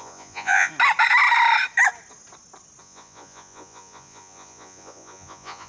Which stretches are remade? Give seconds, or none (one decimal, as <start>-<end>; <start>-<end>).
0.0-0.7; 2.8-5.7